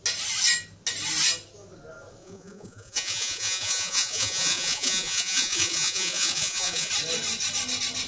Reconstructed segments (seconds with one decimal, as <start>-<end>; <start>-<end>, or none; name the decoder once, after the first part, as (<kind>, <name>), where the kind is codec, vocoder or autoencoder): 2.2-6.9 (vocoder, Vocos)